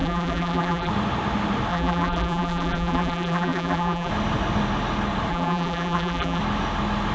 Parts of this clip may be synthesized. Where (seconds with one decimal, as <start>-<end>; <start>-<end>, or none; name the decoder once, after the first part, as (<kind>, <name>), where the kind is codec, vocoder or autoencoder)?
0.0-0.9 (vocoder, BigVGAN v2); 1.7-4.1; 5.3-6.4